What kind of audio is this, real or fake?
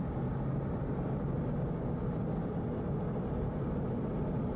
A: real